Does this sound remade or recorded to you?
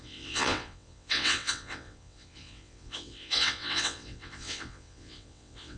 remade